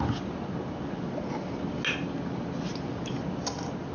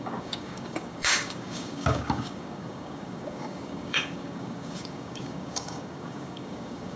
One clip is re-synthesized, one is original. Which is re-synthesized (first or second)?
second